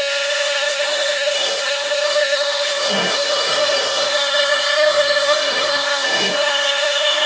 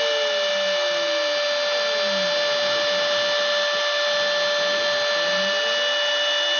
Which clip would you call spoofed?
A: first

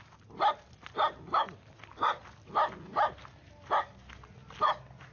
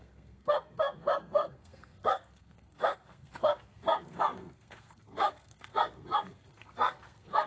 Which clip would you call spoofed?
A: second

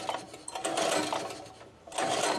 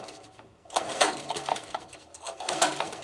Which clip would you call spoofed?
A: second